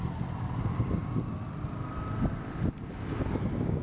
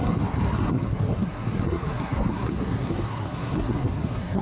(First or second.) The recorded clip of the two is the first